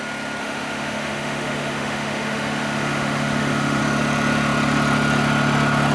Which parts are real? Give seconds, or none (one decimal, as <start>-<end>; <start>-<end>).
0.0-0.4; 3.8-5.9